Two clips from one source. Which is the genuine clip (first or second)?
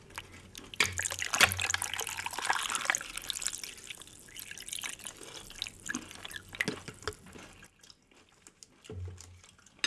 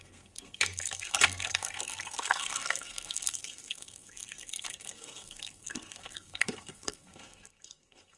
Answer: first